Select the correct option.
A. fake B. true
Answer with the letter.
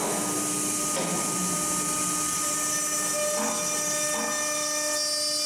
B